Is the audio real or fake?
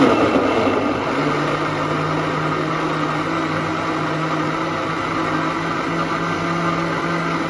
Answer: real